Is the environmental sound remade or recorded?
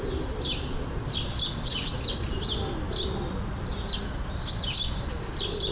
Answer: recorded